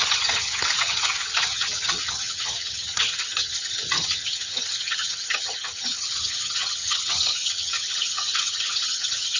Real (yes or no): no